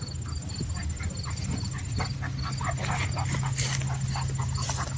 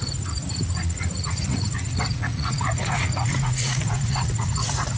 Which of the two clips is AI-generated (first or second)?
second